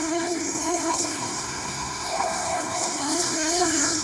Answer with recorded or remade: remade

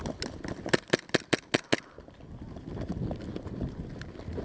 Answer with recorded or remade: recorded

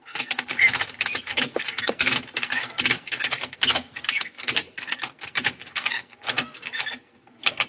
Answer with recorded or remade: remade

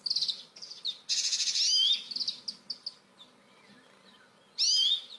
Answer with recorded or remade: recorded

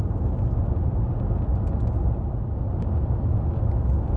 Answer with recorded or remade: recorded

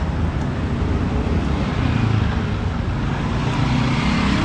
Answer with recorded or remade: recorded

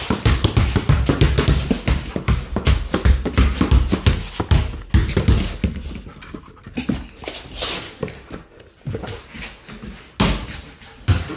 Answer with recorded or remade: recorded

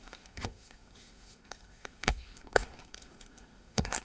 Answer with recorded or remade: remade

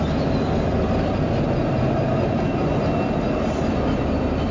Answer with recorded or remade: recorded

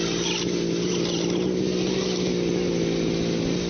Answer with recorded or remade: recorded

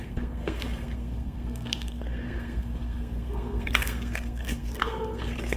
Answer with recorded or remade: remade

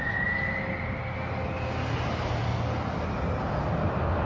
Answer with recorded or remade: recorded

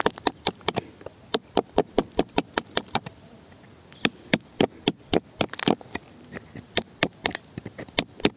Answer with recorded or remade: recorded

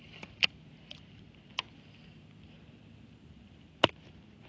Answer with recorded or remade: recorded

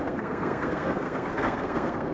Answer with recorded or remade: remade